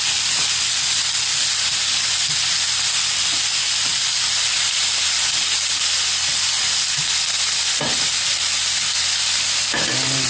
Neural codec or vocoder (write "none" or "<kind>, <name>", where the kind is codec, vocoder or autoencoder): none